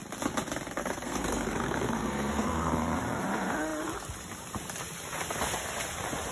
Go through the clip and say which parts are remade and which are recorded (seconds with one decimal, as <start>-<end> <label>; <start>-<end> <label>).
0.0-0.8 recorded; 0.8-2.7 remade; 2.7-6.3 recorded